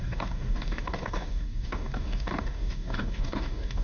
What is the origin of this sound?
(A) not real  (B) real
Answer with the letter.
A